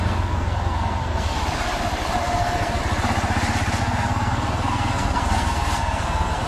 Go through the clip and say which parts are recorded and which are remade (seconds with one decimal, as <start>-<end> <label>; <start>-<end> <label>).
0.0-1.4 remade; 1.4-2.2 recorded; 2.2-2.8 remade; 2.8-3.8 recorded; 3.8-6.5 remade